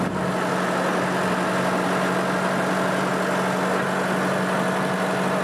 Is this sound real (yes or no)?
yes